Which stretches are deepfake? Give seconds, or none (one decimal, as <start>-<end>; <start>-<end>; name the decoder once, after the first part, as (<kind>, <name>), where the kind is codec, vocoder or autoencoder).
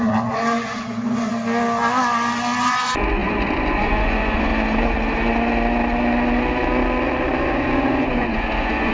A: 0.0-1.3 (vocoder, Vocos); 2.6-4.5; 7.4-8.9